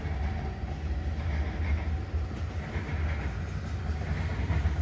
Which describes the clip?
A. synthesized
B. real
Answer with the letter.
B